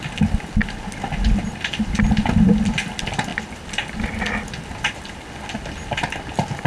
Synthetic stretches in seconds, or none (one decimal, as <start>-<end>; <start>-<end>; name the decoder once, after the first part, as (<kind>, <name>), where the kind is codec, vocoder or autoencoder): none